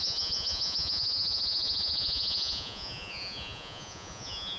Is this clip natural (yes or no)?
no